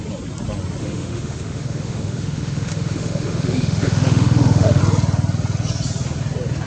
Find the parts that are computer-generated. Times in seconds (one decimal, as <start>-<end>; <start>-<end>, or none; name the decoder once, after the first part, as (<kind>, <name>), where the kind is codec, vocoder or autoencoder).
0.8-4.8 (autoencoder, DAC-VAE)

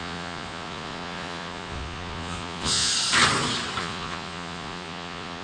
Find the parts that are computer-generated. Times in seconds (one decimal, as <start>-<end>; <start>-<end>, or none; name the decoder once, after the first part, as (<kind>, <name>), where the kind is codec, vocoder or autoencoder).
0.0-2.9 (vocoder, Vocos); 3.8-5.4

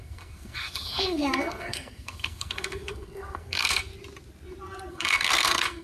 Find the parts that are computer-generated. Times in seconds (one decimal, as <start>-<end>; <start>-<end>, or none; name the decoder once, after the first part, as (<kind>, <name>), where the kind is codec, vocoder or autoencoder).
0.0-3.9 (codec, SNAC); 4.9-5.8